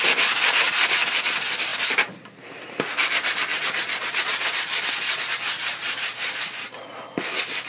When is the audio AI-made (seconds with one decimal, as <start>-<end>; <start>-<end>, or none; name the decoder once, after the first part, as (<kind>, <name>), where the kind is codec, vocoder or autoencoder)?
3.5-4.6 (vocoder, BigVGAN v2); 5.7-6.8